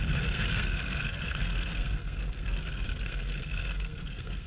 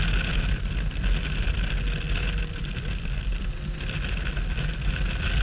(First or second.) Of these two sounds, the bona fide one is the second